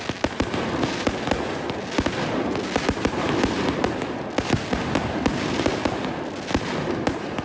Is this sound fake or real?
real